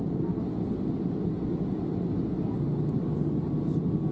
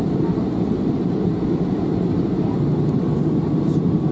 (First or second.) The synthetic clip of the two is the second